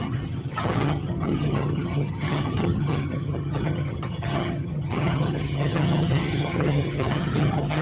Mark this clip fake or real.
fake